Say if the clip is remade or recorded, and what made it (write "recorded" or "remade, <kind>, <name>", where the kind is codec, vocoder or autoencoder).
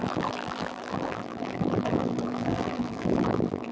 remade, vocoder, BigVGAN v2